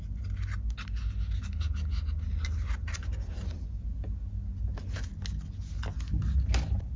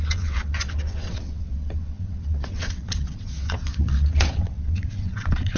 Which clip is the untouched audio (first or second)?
first